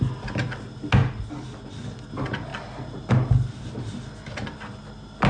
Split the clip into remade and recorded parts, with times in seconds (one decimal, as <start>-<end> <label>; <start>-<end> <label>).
0.0-5.3 recorded